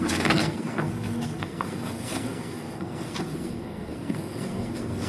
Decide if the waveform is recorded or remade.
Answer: remade